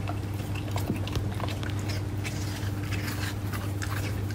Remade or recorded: recorded